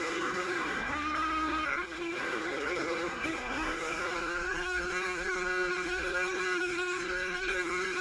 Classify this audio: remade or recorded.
remade